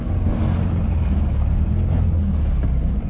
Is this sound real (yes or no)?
yes